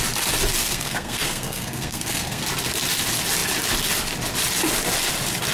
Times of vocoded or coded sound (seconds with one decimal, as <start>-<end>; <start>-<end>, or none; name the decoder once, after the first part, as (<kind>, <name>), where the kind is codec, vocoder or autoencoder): 0.6-2.4 (codec, SNAC)